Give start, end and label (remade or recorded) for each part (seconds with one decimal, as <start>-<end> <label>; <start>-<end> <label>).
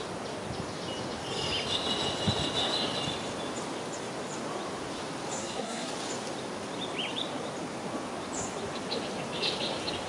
0.0-5.4 recorded; 5.4-5.9 remade; 5.9-10.1 recorded